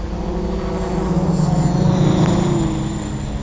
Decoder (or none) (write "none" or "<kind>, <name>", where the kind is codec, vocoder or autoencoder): none